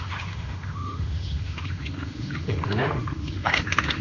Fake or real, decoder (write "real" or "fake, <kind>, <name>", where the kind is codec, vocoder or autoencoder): fake, autoencoder, DAC-VAE